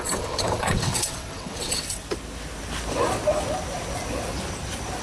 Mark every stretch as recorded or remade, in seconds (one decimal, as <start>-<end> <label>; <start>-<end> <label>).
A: 0.0-2.0 remade; 2.0-5.0 recorded